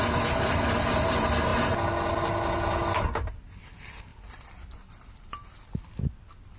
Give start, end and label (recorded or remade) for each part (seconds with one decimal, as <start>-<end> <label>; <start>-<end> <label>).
0.0-4.1 recorded; 4.1-6.6 remade